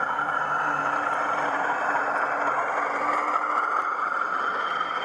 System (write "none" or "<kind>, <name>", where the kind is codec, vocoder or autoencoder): none